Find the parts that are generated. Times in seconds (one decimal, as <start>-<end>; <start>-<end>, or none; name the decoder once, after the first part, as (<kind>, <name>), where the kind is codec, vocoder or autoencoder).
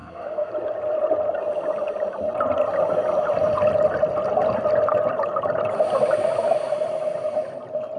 0.0-0.5 (codec, SNAC)